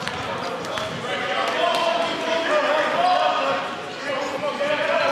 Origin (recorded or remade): recorded